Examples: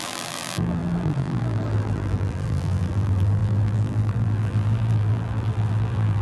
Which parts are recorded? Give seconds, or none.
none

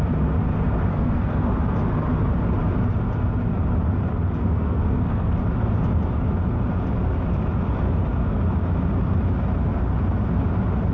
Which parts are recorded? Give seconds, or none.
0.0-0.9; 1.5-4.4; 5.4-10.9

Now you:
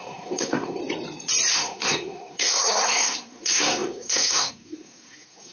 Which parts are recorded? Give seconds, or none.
0.8-1.5

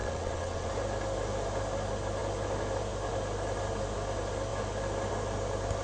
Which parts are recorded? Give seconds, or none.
0.7-5.8